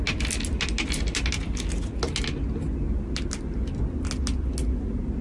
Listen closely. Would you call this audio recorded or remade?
recorded